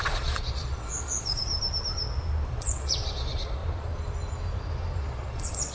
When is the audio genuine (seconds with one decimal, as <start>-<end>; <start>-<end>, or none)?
1.5-2.5; 3.6-5.0